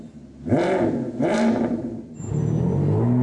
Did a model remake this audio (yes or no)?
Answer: no